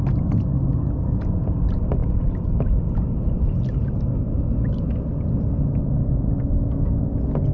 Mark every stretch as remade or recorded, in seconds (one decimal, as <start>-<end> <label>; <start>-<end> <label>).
0.0-7.5 recorded